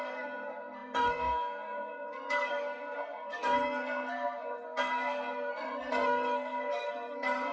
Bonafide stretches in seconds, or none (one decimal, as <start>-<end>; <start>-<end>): none